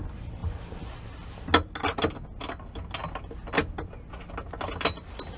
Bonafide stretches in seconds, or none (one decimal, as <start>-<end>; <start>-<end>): 0.0-5.4